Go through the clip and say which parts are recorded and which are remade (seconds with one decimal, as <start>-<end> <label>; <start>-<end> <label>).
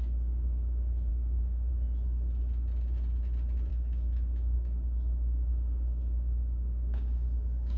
0.0-1.1 recorded; 1.1-1.7 remade; 1.7-3.7 recorded; 3.7-7.8 remade